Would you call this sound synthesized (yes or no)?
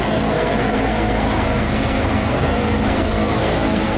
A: yes